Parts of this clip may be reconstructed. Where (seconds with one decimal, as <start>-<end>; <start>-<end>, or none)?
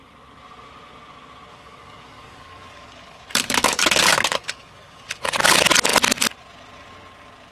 1.5-5.4